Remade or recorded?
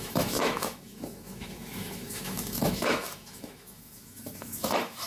remade